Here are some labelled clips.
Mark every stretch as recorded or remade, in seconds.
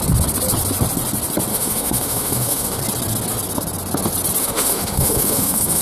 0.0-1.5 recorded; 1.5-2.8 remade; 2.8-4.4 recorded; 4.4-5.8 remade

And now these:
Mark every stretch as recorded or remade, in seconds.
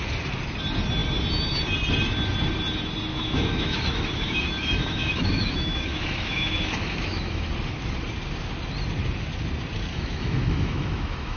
0.0-3.1 recorded; 3.1-7.5 remade; 7.5-9.9 recorded; 9.9-11.4 remade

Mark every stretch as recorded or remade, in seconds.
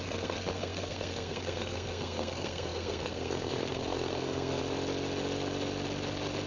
0.0-4.6 remade; 4.6-6.5 recorded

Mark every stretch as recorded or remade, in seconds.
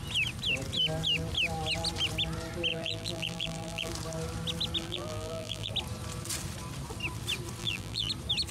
0.0-2.7 recorded; 2.7-3.9 remade; 3.9-4.8 recorded; 4.8-5.7 remade; 5.7-7.6 recorded; 7.6-8.1 remade; 8.1-8.5 recorded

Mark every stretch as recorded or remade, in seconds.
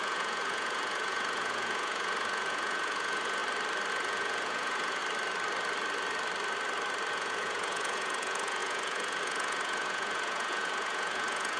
0.0-3.4 remade; 3.4-3.9 recorded; 3.9-5.0 remade; 5.0-7.1 recorded; 7.1-11.6 remade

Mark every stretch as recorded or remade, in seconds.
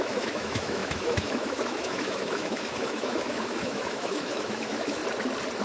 0.0-5.0 remade; 5.0-5.6 recorded